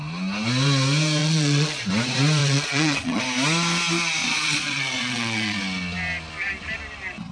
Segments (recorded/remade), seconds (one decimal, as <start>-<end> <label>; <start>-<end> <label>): 0.0-1.2 recorded; 1.2-1.8 remade; 1.8-2.4 recorded; 2.4-3.2 remade; 3.2-4.2 recorded; 4.2-5.6 remade; 5.6-7.3 recorded